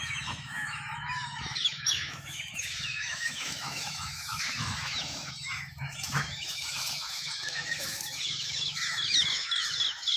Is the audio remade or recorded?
remade